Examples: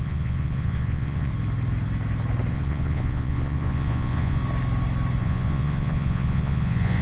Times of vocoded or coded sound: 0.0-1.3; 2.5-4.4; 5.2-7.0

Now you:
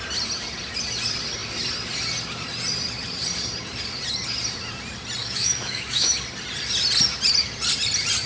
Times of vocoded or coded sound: 5.2-6.1

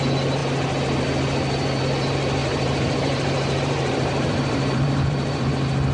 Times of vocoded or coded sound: 2.4-5.5

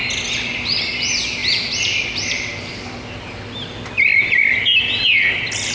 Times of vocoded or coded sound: none